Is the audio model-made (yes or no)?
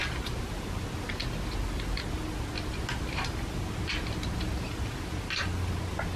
no